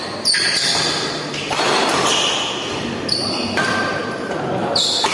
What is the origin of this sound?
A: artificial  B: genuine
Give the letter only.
B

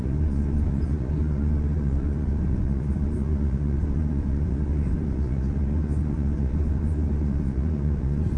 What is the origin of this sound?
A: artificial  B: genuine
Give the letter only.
A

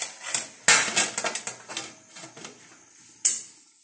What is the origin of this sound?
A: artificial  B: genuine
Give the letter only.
B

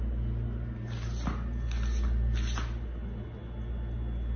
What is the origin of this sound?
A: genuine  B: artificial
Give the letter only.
A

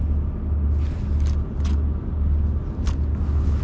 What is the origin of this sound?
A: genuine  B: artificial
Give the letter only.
A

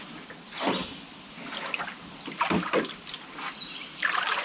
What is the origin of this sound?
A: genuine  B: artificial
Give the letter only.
A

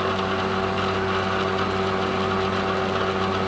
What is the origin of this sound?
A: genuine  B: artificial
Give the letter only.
A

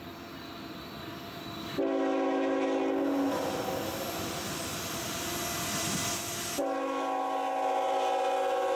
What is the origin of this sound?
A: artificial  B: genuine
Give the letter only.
B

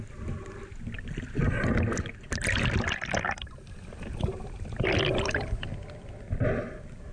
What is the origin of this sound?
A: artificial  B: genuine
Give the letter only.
B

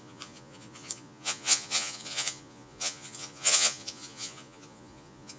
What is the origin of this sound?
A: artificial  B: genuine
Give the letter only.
A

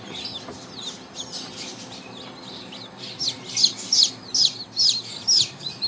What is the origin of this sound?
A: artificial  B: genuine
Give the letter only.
B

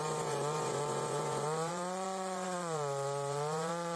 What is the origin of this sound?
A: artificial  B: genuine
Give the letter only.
A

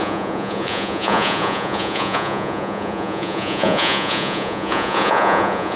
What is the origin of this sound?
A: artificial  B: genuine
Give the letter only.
A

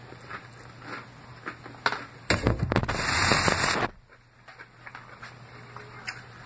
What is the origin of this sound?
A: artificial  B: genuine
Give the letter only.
B